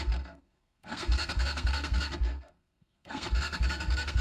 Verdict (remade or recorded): remade